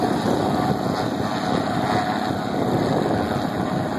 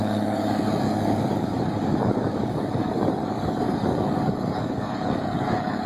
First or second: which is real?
first